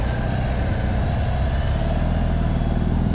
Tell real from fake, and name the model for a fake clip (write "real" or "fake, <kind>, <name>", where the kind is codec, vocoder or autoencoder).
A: real